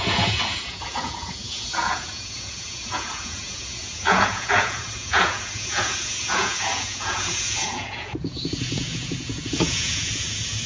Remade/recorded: remade